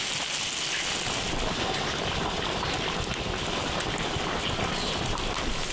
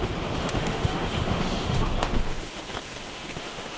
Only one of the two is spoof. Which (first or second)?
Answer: second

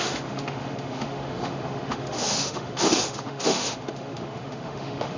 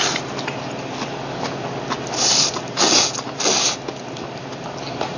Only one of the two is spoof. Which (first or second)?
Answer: first